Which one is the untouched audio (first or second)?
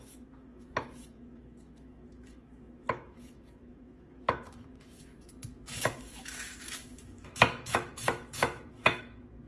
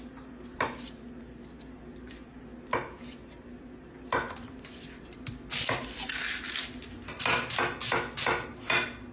second